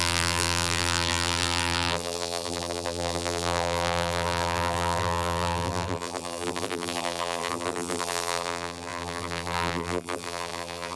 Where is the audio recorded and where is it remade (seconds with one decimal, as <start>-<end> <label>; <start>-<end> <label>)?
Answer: 0.0-11.0 remade